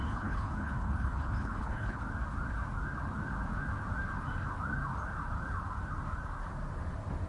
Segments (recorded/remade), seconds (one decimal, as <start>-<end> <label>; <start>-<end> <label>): 0.0-2.0 remade; 2.0-7.3 recorded

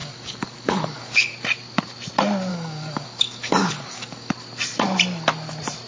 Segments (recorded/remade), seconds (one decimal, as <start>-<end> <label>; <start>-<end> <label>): 0.0-1.3 remade; 1.3-2.5 recorded; 2.5-4.3 remade; 4.3-5.9 recorded

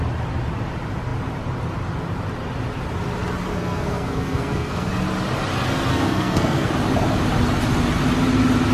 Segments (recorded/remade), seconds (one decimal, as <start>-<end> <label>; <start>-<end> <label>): 0.0-3.5 recorded; 3.5-4.9 remade; 4.9-5.9 recorded; 5.9-6.7 remade; 6.7-8.7 recorded

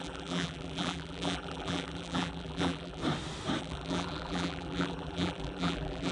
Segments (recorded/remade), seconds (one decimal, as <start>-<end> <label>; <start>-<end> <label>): 0.0-3.0 remade; 3.0-3.6 recorded; 3.6-6.1 remade

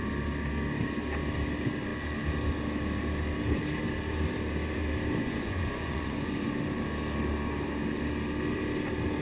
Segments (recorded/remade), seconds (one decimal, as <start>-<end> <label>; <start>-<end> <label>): 0.0-5.2 recorded; 5.2-6.6 remade; 6.6-9.2 recorded

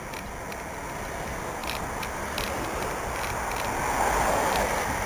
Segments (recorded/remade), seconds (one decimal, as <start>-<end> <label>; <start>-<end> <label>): 0.0-1.6 recorded; 1.6-5.1 remade

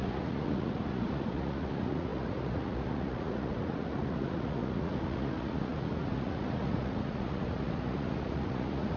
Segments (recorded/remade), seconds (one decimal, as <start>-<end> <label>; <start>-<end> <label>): 0.0-9.0 remade

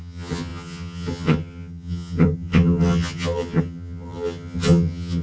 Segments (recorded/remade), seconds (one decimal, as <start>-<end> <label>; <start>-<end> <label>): 0.0-5.2 remade